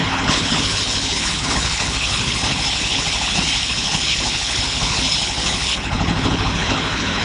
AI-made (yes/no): yes